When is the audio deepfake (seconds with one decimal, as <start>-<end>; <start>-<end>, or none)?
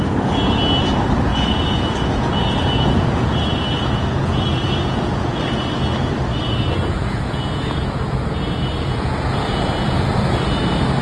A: 1.3-5.4; 6.4-10.1